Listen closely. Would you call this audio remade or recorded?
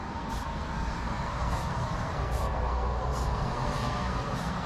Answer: remade